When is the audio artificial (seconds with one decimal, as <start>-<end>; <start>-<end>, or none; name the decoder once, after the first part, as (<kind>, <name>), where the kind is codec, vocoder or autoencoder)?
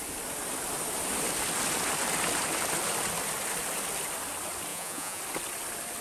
4.7-5.2 (vocoder, Vocos)